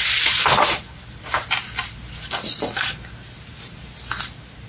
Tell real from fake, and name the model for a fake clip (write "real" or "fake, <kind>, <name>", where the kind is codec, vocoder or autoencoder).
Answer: real